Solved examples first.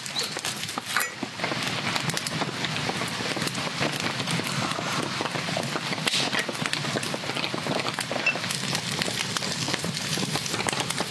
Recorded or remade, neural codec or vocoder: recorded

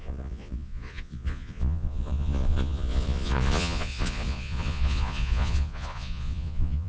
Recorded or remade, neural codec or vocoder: remade, vocoder, Vocos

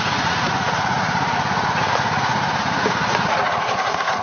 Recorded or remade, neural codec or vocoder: remade, vocoder, Vocos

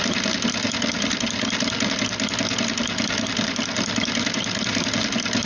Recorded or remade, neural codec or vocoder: recorded